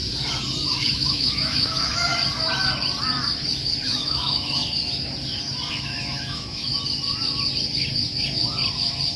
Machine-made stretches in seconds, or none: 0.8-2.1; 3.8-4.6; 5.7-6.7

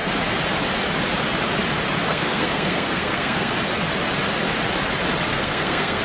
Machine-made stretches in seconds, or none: 2.1-3.5; 5.3-6.0

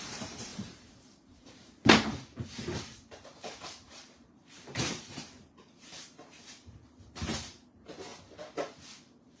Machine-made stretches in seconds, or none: 0.0-8.1; 9.0-9.4

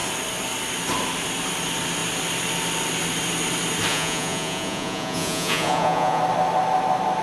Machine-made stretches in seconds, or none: 3.9-6.2

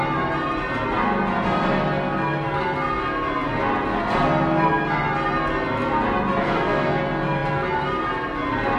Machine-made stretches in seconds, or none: 6.4-7.0